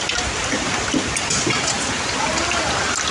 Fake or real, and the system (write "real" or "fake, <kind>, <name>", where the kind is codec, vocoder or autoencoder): real